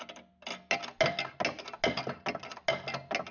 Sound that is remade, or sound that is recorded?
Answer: recorded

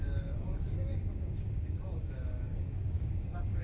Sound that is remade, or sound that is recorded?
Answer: remade